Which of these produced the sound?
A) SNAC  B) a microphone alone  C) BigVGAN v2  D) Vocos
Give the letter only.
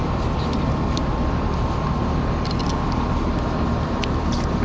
C